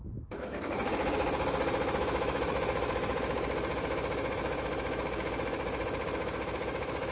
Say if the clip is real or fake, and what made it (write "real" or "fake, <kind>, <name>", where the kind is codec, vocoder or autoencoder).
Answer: fake, autoencoder, DAC-VAE